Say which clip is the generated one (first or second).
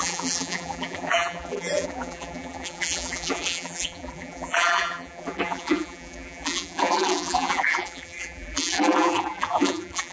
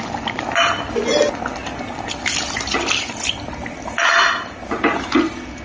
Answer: first